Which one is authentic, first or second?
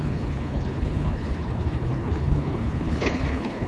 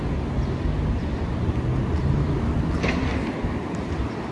second